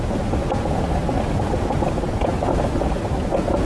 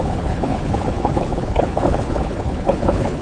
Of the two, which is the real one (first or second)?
first